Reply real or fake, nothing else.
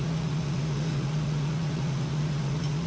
fake